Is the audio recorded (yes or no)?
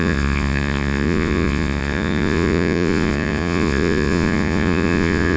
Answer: no